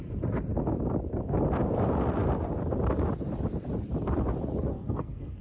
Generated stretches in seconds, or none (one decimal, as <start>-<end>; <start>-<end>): 4.7-5.4